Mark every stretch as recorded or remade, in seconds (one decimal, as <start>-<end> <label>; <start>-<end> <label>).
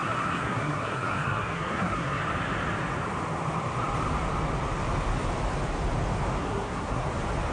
0.0-2.2 remade; 2.2-6.4 recorded; 6.4-7.1 remade; 7.1-7.5 recorded